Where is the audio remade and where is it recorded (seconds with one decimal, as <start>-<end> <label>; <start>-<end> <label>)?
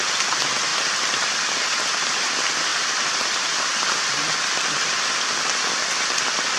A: 0.0-0.7 recorded; 0.7-2.3 remade; 2.3-2.7 recorded; 2.7-3.4 remade; 3.4-6.6 recorded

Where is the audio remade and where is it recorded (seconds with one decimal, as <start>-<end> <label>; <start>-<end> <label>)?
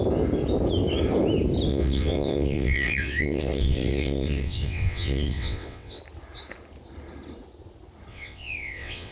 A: 0.0-1.7 recorded; 1.7-6.0 remade; 6.0-8.1 recorded; 8.1-9.1 remade